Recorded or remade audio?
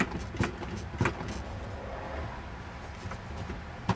recorded